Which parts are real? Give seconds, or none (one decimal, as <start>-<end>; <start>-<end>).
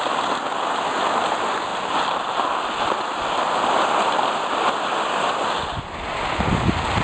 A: 0.0-7.0